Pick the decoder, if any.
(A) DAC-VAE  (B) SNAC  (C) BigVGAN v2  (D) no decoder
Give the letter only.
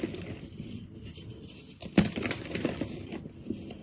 D